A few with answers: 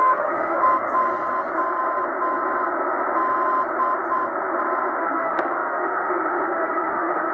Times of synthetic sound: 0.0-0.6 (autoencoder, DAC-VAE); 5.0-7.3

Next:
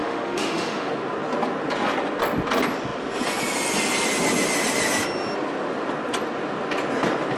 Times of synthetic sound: 0.0-0.9 (autoencoder, DAC-VAE)